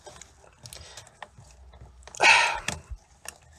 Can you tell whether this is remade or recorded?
recorded